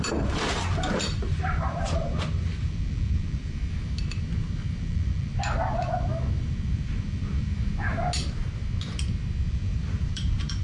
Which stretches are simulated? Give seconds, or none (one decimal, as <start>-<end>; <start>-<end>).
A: 0.0-3.6; 4.8-5.3; 6.4-7.5; 9.5-10.6

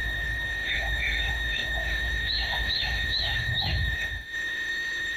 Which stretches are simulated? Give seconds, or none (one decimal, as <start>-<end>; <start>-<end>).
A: 0.0-5.2